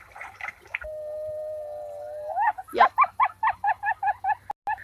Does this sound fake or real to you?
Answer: real